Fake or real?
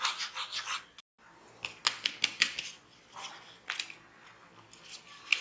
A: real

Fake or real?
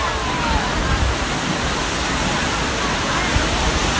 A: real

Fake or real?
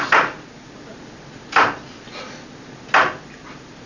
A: real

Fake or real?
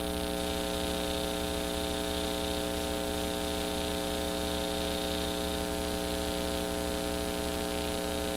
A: real